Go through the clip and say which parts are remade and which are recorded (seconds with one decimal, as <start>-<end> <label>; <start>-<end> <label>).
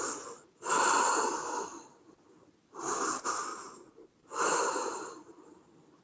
0.0-3.5 recorded; 3.5-4.1 remade; 4.1-6.0 recorded